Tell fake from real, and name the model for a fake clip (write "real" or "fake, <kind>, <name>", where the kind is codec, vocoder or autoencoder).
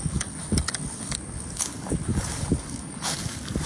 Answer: fake, codec, DAC